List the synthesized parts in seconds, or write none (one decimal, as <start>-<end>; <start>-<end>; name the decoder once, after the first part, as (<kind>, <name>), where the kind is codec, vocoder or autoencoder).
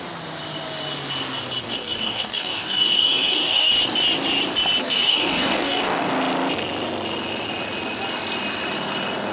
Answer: 1.6-3.7 (codec, DAC); 4.8-6.1